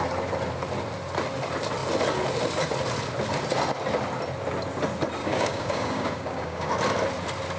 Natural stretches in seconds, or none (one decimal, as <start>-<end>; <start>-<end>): 0.0-5.2; 6.7-7.6